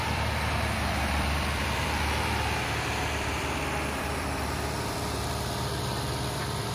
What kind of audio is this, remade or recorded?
remade